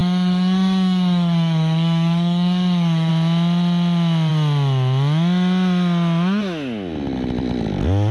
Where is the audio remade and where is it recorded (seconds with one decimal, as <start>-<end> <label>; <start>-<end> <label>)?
0.0-3.1 remade; 3.1-8.1 recorded